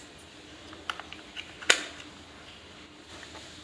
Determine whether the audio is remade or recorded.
recorded